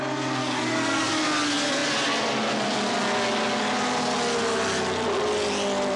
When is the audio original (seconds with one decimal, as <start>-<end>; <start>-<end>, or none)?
0.0-0.4; 1.1-6.0